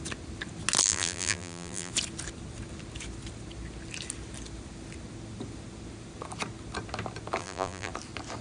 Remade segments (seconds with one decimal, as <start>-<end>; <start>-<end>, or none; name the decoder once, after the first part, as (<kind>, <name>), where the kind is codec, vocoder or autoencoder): 0.8-1.9 (vocoder, BigVGAN v2); 7.4-7.9